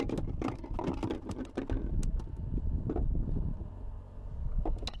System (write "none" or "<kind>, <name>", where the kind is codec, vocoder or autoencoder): none